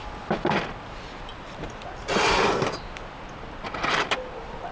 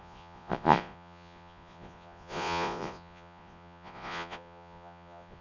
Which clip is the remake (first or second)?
second